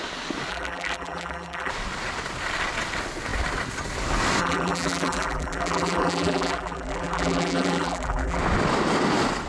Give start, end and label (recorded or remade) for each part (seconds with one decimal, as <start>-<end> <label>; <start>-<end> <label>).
0.0-0.5 recorded; 0.5-1.7 remade; 1.7-4.4 recorded; 4.4-8.4 remade; 8.4-9.5 recorded